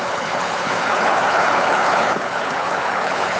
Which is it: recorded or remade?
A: remade